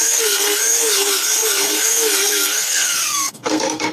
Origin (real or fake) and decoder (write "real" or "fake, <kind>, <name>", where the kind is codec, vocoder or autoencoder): fake, codec, SNAC